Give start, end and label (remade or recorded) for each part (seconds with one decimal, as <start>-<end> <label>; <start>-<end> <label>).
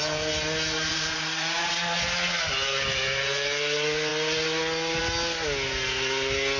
0.0-0.9 recorded; 0.9-1.7 remade; 1.7-6.6 recorded